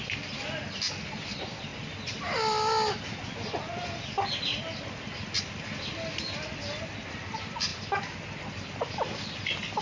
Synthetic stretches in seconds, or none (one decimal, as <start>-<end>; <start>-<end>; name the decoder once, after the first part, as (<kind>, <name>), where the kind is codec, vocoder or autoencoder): none